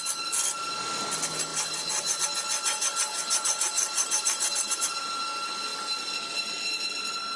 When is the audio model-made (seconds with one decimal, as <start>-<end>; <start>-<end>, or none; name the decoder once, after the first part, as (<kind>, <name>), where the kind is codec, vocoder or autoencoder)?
3.1-5.0 (vocoder, BigVGAN v2)